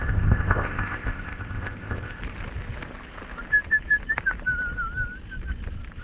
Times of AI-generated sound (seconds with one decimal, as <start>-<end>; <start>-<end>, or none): 0.0-2.2